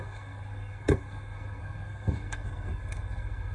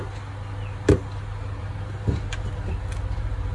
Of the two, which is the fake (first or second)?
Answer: first